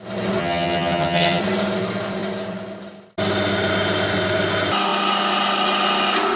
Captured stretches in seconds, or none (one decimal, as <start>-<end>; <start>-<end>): 0.0-0.4; 1.4-6.4